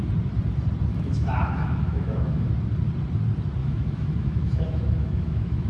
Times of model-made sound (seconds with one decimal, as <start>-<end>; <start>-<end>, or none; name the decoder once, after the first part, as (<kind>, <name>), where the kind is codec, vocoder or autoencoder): 0.9-2.5 (autoencoder, DAC-VAE); 3.6-5.7